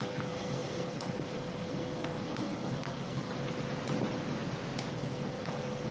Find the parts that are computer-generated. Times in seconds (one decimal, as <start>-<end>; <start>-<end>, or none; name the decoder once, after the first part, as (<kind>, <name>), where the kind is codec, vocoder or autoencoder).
0.0-3.3 (codec, SNAC); 4.9-5.9